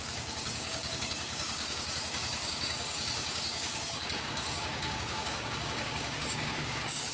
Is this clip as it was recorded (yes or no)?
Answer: no